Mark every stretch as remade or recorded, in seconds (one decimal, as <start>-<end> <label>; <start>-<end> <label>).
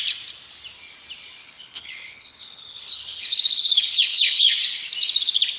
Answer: 0.0-1.4 recorded; 1.4-4.5 remade; 4.5-5.6 recorded